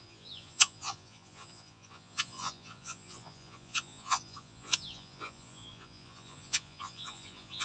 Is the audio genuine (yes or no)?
no